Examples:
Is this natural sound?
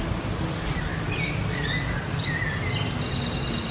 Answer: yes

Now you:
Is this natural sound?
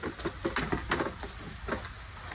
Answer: yes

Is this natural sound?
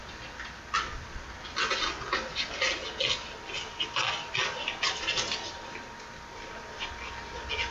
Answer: yes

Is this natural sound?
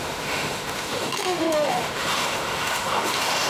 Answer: no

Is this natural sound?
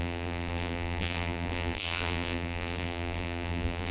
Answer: no